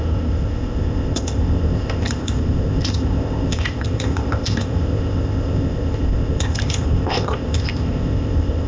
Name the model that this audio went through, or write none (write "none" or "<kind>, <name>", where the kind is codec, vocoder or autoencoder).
codec, ZipCodec